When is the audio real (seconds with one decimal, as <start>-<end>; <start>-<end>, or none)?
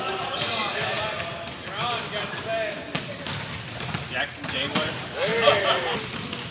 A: 0.6-4.2; 5.3-6.5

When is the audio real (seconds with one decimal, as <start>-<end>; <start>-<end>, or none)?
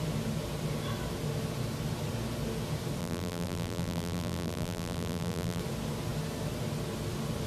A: 0.0-3.0; 5.6-7.5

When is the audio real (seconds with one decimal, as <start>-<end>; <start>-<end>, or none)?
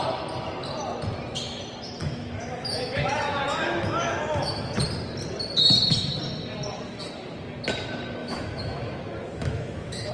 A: 0.0-2.0; 4.8-8.2